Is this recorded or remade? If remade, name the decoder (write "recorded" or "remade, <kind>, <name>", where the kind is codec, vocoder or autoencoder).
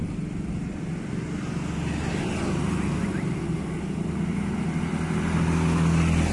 recorded